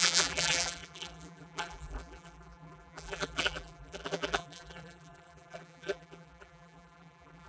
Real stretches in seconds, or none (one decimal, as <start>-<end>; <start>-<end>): none